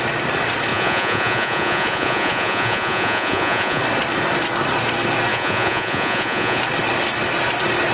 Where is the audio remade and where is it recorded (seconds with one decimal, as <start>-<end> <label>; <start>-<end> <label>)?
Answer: 0.0-0.7 recorded; 0.7-3.8 remade; 3.8-5.3 recorded; 5.3-6.6 remade; 6.6-7.9 recorded